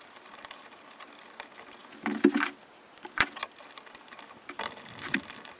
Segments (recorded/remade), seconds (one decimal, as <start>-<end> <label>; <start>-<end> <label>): 0.0-1.8 remade; 1.8-2.6 recorded; 2.6-3.4 remade; 3.4-4.1 recorded; 4.1-5.6 remade